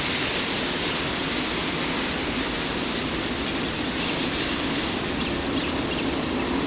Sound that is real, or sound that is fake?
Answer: real